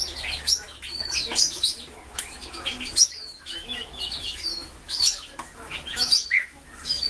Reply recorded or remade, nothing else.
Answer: remade